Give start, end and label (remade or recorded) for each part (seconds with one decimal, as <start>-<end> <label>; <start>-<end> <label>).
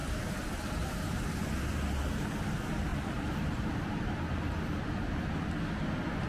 0.0-1.2 remade; 1.2-2.9 recorded; 2.9-3.7 remade; 3.7-6.3 recorded